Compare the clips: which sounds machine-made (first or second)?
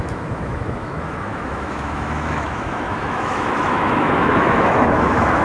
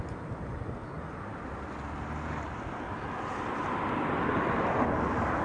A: first